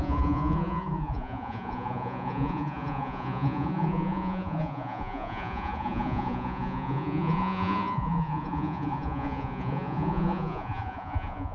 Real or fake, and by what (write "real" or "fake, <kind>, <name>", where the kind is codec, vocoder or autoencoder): fake, vocoder, Vocos